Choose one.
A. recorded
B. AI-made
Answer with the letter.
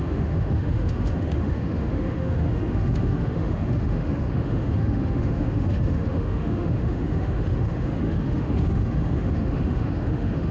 B